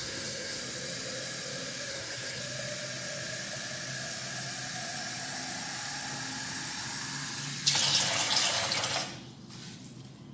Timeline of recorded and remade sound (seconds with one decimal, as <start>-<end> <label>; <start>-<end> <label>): 0.0-0.6 remade; 0.6-1.9 recorded; 1.9-2.4 remade; 2.4-10.3 recorded